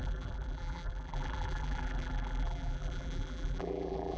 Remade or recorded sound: remade